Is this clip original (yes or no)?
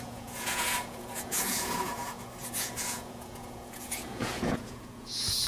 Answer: no